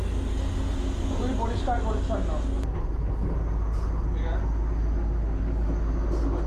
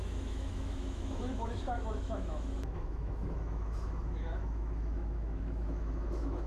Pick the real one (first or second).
first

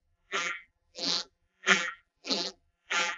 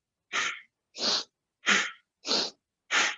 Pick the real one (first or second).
second